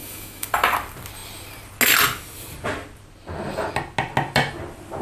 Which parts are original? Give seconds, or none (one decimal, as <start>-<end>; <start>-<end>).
0.5-5.0